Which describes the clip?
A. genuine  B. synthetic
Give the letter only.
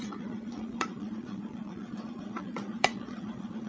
B